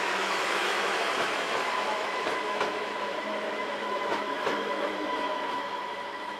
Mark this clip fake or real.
fake